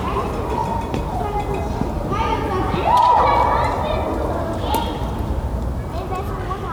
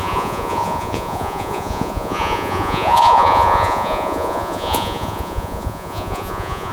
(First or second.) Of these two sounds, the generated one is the second